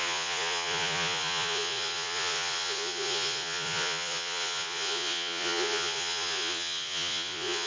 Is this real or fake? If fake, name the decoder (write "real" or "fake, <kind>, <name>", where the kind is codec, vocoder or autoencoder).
fake, vocoder, Vocos